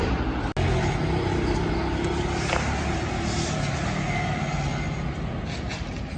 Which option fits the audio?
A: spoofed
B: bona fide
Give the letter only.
B